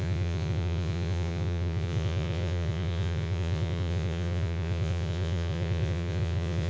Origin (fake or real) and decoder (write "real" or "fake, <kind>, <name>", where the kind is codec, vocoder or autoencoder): fake, vocoder, Vocos